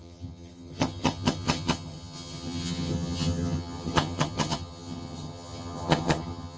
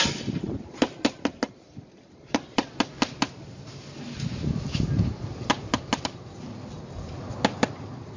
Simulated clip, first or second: first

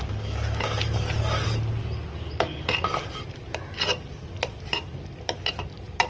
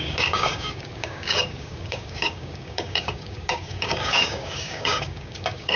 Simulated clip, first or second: second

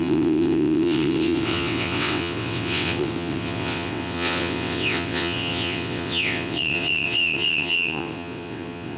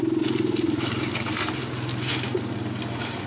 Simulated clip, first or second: first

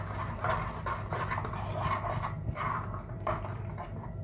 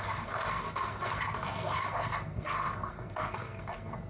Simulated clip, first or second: second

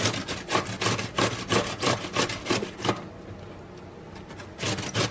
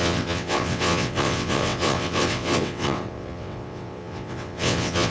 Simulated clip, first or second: second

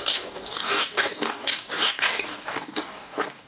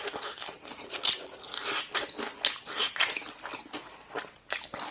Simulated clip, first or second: first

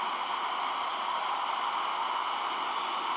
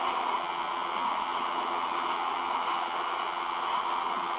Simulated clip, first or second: second